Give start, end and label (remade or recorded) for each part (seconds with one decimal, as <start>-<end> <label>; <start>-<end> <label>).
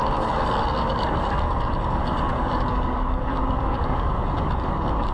0.0-5.1 remade